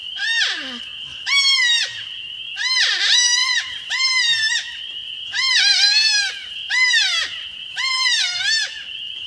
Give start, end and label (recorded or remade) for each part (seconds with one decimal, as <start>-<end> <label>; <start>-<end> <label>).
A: 0.0-0.9 remade; 0.9-3.0 recorded; 3.0-8.3 remade; 8.3-8.9 recorded; 8.9-9.3 remade